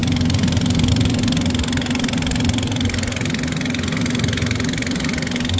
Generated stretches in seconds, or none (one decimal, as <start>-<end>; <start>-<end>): none

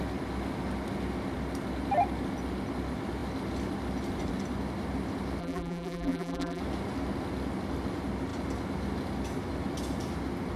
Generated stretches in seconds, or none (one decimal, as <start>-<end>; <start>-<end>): 5.4-6.6

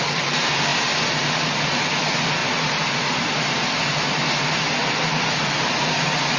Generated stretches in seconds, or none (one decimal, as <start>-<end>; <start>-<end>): none

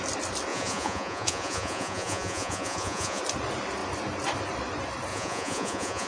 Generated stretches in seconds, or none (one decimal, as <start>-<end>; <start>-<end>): 0.5-3.2; 5.1-6.1

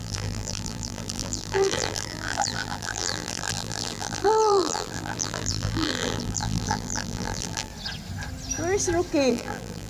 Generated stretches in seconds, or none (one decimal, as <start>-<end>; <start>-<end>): 0.0-7.7; 9.3-9.9

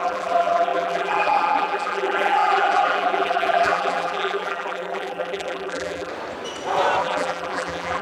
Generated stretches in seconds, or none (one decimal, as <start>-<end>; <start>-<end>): 0.0-6.1; 7.0-8.0

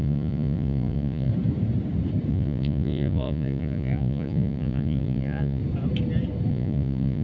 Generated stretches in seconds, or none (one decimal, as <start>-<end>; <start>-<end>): 0.0-1.3; 2.3-5.6; 6.5-7.2